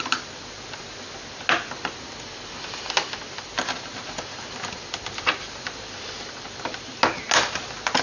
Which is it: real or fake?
real